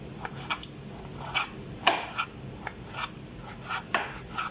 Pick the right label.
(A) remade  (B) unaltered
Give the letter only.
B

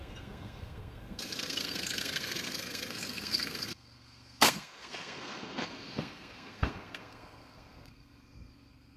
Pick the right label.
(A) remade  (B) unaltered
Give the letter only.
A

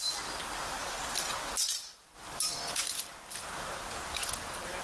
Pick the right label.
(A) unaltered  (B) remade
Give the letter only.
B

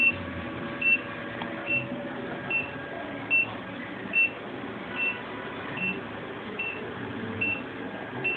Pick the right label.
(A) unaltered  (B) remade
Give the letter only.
A